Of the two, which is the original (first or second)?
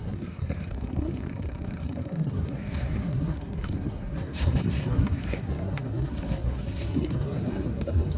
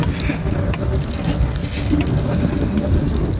second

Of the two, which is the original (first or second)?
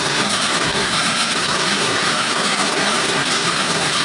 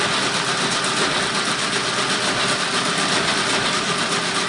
second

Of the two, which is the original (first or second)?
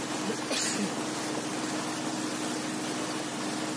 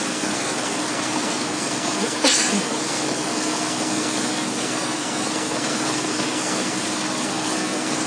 first